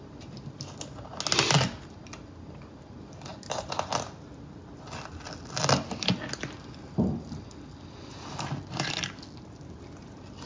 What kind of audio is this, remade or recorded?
recorded